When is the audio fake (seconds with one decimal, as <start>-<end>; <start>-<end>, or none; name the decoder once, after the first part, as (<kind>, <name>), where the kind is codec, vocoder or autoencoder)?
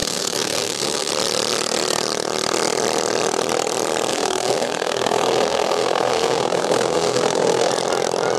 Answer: 0.0-1.1 (codec, SNAC); 4.1-7.7